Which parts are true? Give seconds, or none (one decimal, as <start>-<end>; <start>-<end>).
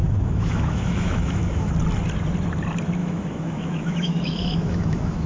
1.7-3.0